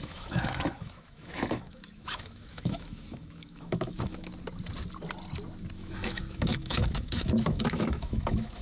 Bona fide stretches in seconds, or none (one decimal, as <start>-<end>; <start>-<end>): 4.3-5.7